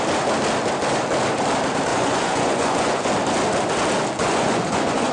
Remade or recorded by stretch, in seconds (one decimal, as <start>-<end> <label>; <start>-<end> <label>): 0.0-1.9 recorded; 1.9-3.1 remade; 3.1-4.2 recorded; 4.2-5.1 remade